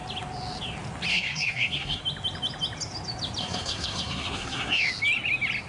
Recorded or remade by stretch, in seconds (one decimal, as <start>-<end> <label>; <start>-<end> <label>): 0.0-1.1 recorded; 1.1-2.0 remade; 2.0-3.4 recorded; 3.4-4.9 remade; 4.9-5.7 recorded